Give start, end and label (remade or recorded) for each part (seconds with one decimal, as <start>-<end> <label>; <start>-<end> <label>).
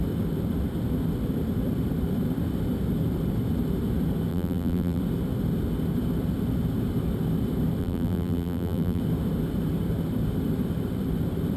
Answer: 0.0-4.3 recorded; 4.3-5.0 remade; 5.0-7.8 recorded; 7.8-9.0 remade; 9.0-11.6 recorded